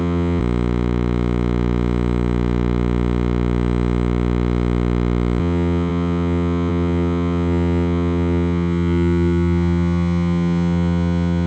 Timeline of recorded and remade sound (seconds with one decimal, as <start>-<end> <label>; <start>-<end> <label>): 0.0-0.4 remade; 0.4-5.4 recorded; 5.4-11.5 remade